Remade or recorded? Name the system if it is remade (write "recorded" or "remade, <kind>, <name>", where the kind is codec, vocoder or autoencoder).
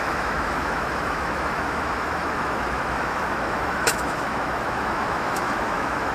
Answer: remade, autoencoder, DAC-VAE